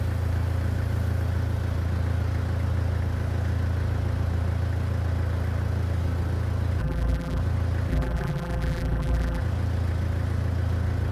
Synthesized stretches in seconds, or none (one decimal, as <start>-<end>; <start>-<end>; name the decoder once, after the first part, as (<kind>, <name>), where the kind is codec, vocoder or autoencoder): 6.8-7.4 (vocoder, BigVGAN v2); 7.9-9.4